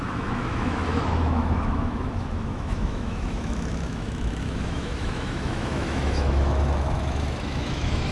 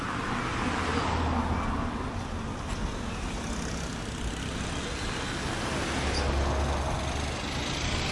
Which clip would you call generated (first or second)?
first